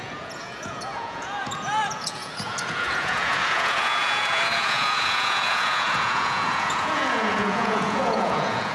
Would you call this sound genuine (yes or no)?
no